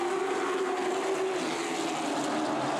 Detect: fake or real real